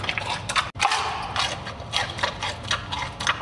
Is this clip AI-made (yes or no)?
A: no